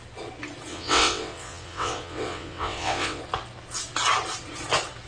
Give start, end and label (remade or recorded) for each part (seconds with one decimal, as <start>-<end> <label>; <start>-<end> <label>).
0.0-0.7 recorded; 0.7-3.2 remade; 3.2-5.1 recorded

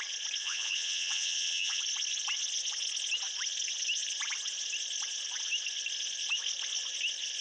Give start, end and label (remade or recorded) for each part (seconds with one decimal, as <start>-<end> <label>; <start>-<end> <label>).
0.0-0.4 recorded; 0.4-1.8 remade; 1.8-7.4 recorded

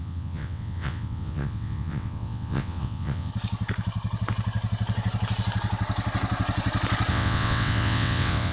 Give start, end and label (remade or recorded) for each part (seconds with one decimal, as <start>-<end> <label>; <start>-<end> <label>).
0.0-3.3 remade; 3.3-7.1 recorded; 7.1-8.5 remade

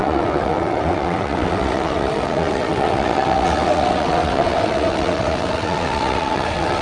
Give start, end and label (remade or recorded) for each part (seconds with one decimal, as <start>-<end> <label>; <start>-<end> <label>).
0.0-6.8 remade